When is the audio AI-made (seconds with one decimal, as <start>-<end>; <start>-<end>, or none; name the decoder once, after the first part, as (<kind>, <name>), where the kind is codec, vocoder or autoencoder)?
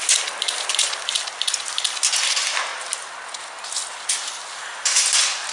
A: none